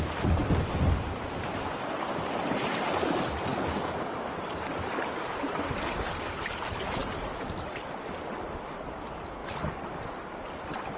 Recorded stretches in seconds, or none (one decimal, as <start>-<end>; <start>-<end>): 0.4-1.0; 3.5-6.1; 7.0-8.2